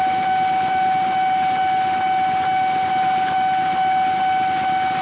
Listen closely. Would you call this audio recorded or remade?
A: recorded